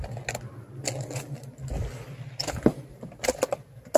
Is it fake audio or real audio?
real